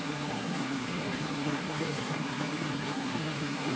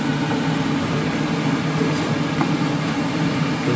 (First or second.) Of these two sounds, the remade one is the first